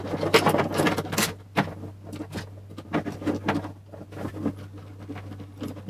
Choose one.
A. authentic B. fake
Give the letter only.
A